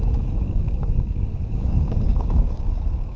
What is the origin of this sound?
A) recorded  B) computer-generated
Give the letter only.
B